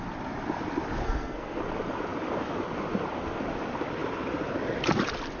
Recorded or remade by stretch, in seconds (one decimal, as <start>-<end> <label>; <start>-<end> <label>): 0.0-1.0 recorded; 1.0-1.6 remade; 1.6-5.4 recorded